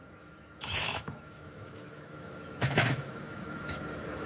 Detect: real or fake fake